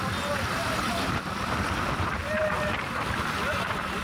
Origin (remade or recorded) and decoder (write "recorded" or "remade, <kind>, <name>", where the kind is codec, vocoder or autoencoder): recorded